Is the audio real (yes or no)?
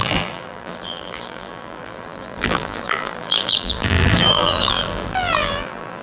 no